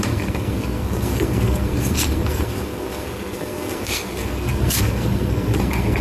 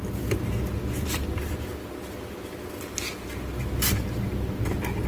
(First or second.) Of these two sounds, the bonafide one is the second